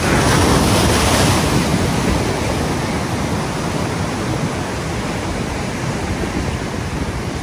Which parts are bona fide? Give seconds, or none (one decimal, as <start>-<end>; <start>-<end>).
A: 0.0-7.4